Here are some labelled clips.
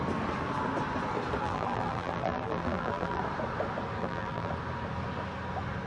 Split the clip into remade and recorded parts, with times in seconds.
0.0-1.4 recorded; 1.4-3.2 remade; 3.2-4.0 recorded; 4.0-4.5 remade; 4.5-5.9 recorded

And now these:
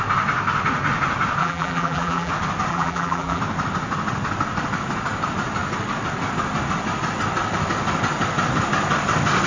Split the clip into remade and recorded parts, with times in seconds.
0.0-1.4 recorded; 1.4-2.3 remade; 2.3-2.7 recorded; 2.7-3.4 remade; 3.4-9.5 recorded

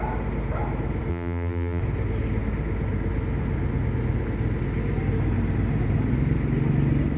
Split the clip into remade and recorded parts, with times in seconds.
0.0-1.1 recorded; 1.1-1.8 remade; 1.8-7.2 recorded